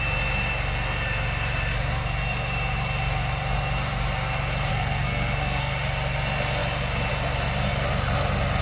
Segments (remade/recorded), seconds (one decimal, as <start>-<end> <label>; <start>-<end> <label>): 0.0-4.7 recorded; 4.7-5.7 remade; 5.7-8.6 recorded